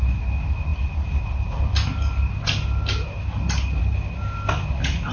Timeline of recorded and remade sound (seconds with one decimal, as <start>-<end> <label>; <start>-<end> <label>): 0.0-5.1 recorded